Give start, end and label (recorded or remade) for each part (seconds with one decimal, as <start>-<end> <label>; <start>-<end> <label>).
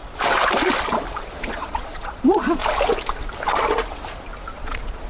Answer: 0.0-1.4 recorded; 1.4-2.6 remade; 2.6-4.6 recorded; 4.6-5.1 remade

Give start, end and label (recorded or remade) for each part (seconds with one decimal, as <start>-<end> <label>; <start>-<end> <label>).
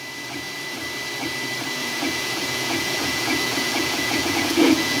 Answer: 0.0-1.8 recorded; 1.8-5.0 remade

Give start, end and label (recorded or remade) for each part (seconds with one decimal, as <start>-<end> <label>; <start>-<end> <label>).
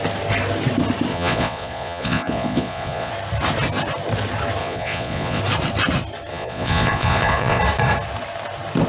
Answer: 0.0-1.1 recorded; 1.1-3.1 remade; 3.1-4.6 recorded; 4.6-5.4 remade; 5.4-6.3 recorded; 6.3-7.6 remade; 7.6-8.9 recorded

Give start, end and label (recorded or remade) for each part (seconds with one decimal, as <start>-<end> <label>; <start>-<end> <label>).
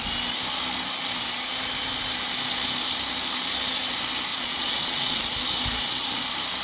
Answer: 0.0-4.3 recorded; 4.3-5.2 remade; 5.2-6.6 recorded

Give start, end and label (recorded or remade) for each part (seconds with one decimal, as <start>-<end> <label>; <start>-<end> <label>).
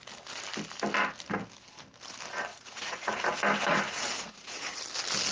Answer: 0.0-2.5 recorded; 2.5-3.2 remade; 3.2-3.7 recorded; 3.7-4.8 remade; 4.8-5.3 recorded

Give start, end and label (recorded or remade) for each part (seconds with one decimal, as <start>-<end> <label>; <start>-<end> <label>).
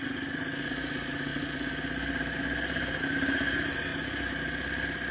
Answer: 0.0-5.1 recorded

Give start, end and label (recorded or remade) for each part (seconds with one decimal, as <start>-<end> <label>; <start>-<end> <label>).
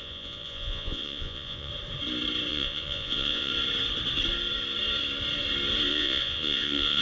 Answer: 0.0-1.7 remade; 1.7-2.5 recorded; 2.5-3.5 remade; 3.5-5.9 recorded; 5.9-7.0 remade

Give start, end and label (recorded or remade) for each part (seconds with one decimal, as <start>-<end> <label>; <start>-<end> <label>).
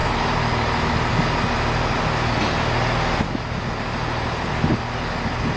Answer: 0.0-5.6 recorded